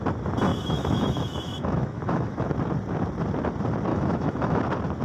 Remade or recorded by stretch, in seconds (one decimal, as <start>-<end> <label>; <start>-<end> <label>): 0.0-0.5 recorded; 0.5-2.5 remade; 2.5-3.9 recorded; 3.9-4.6 remade; 4.6-5.0 recorded